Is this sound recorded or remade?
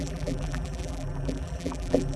remade